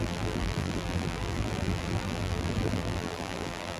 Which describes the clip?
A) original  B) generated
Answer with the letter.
B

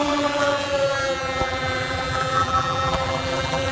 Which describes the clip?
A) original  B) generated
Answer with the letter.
B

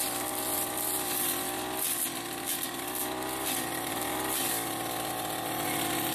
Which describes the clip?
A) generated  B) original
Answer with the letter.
B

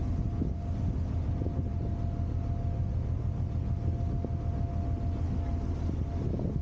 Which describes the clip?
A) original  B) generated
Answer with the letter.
A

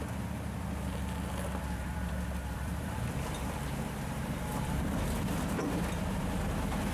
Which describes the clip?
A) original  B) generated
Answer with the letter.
B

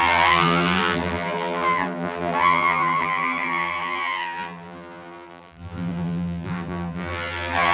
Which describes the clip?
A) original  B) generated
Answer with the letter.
B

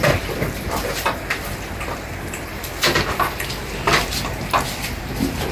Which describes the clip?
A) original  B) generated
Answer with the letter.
B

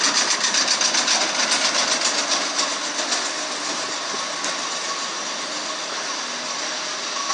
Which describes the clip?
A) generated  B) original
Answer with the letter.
B